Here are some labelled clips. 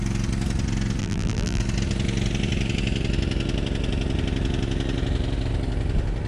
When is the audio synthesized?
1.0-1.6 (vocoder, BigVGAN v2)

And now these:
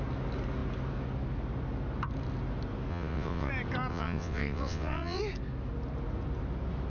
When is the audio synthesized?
2.9-3.5 (vocoder, WaveNeXt); 3.9-5.2

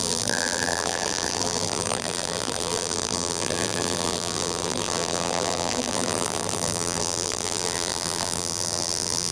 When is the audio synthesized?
0.0-9.3 (vocoder, BigVGAN v2)

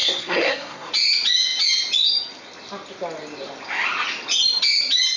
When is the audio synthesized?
0.0-0.9 (codec, SNAC)